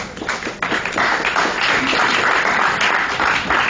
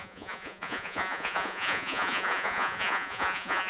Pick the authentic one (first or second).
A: first